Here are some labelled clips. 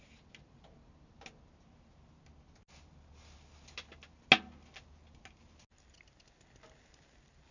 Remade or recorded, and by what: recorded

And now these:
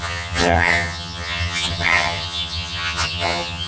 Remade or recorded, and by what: remade, vocoder, HiFi-GAN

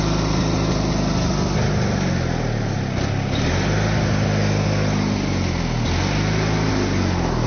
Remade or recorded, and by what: recorded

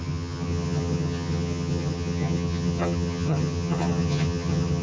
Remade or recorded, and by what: remade, vocoder, HiFi-GAN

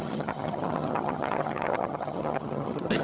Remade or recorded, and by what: remade, vocoder, HiFi-GAN